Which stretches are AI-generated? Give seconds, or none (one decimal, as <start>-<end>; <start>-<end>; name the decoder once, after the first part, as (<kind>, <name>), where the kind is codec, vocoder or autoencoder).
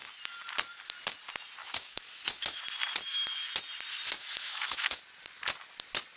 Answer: 1.6-2.6 (autoencoder, DAC-VAE); 4.2-5.0